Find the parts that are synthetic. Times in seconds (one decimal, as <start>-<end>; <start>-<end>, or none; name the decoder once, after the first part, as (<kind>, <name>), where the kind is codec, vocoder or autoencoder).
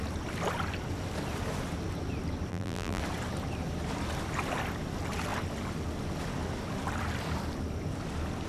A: 2.5-3.0 (vocoder, BigVGAN v2)